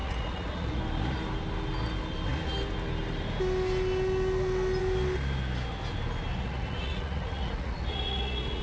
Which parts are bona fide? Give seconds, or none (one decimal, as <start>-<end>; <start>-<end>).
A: 0.8-6.3